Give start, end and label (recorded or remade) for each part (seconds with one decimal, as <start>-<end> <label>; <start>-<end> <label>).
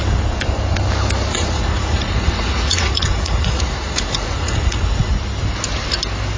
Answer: 0.0-1.3 recorded; 1.3-5.1 remade; 5.1-6.4 recorded